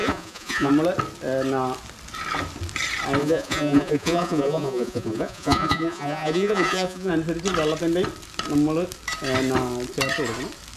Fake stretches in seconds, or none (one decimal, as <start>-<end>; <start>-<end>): 0.0-0.7; 3.2-7.1